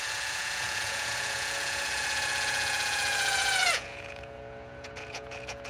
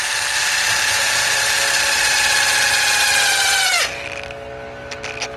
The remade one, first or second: first